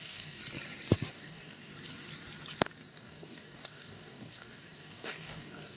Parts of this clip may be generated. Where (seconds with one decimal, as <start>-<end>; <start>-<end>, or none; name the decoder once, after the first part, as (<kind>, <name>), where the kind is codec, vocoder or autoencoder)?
0.0-0.4 (codec, DAC); 1.1-1.7; 2.9-5.8